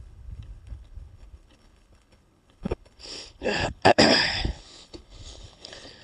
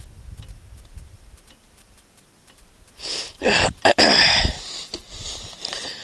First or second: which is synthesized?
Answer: first